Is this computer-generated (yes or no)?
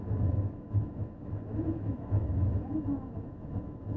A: yes